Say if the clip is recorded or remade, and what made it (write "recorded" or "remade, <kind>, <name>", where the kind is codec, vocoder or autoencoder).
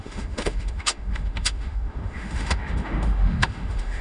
remade, autoencoder, DAC-VAE